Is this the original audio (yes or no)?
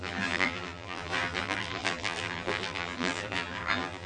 no